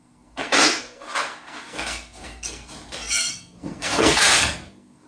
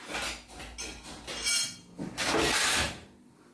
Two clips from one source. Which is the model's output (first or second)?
first